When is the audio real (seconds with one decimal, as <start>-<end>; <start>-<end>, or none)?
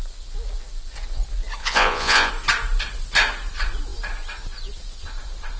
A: 0.0-1.6; 2.3-5.6